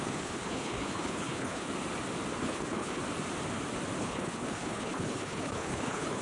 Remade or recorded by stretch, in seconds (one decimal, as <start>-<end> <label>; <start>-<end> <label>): 0.0-1.7 remade; 1.7-2.4 recorded; 2.4-3.0 remade; 3.0-4.0 recorded; 4.0-6.2 remade